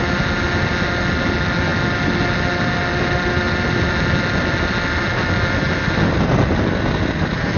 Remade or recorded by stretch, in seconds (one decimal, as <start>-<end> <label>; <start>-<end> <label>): 0.0-7.6 recorded